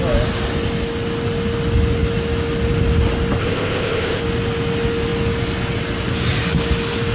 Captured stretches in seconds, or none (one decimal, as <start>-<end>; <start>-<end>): 0.0-3.4; 4.2-7.1